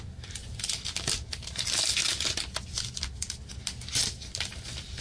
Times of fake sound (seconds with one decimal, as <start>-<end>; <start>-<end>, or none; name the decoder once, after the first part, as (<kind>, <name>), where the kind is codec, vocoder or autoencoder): none